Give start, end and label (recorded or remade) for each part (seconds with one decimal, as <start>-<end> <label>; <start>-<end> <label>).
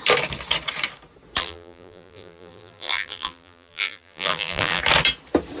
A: 0.0-1.4 recorded; 1.4-4.8 remade; 4.8-5.6 recorded